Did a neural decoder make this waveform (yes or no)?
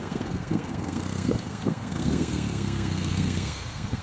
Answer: yes